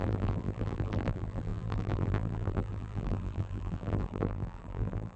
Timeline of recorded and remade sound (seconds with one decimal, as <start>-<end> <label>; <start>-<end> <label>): 0.0-5.2 remade